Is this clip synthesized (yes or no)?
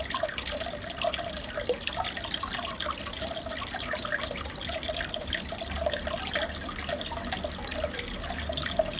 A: no